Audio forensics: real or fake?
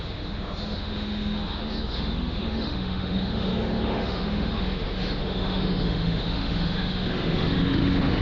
fake